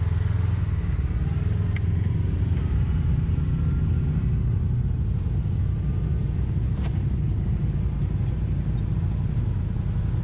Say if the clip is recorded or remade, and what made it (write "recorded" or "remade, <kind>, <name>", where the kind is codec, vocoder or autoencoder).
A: recorded